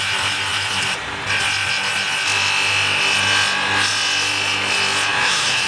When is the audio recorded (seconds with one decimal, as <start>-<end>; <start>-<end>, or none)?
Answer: 0.0-5.1